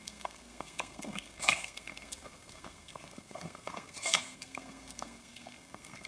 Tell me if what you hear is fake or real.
fake